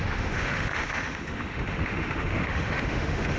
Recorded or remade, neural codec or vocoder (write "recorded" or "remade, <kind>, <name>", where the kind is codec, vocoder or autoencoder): remade, autoencoder, DAC-VAE